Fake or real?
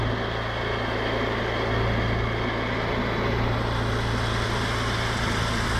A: real